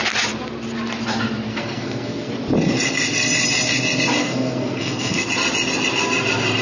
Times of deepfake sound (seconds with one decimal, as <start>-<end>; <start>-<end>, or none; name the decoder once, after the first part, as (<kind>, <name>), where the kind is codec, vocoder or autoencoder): 1.5-2.3 (codec, SNAC); 4.2-5.3